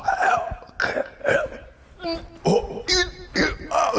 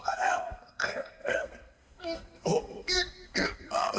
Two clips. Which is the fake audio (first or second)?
second